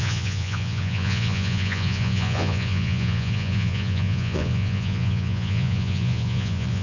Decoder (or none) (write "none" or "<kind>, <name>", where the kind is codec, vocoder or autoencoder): vocoder, Vocos